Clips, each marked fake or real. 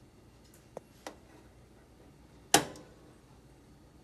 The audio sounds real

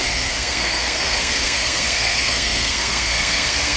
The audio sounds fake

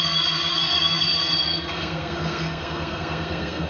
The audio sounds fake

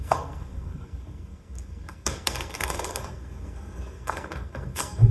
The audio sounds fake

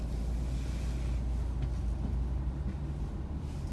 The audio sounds real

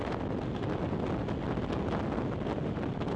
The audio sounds real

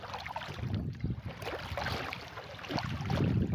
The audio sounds real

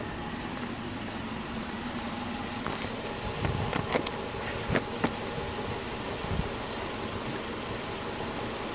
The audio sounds real